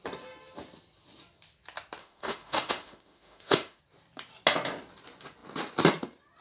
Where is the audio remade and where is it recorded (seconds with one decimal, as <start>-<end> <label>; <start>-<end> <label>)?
0.0-2.0 recorded; 2.0-3.8 remade; 3.8-6.4 recorded